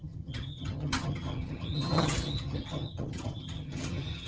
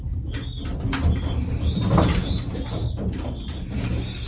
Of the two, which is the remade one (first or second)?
first